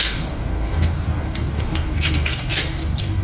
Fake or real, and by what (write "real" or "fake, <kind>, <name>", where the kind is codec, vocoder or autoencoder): fake, codec, DAC